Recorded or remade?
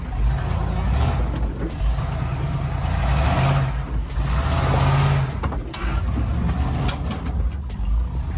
recorded